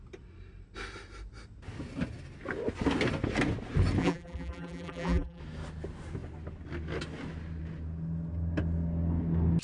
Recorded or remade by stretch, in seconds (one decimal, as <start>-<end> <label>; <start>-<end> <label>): 0.0-4.0 recorded; 4.0-5.4 remade; 5.4-9.6 recorded